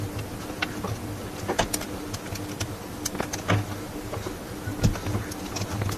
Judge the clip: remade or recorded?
recorded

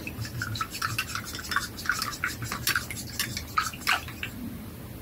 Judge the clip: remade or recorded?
recorded